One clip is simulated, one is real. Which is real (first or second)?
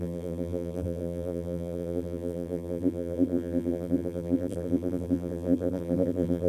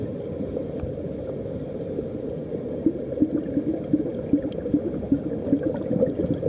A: second